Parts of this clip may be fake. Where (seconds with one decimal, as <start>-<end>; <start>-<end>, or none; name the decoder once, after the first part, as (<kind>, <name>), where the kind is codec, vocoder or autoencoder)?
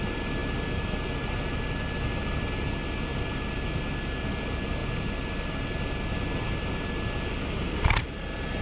none